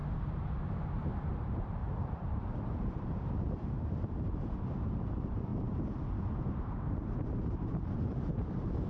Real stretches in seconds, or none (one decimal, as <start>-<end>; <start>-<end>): none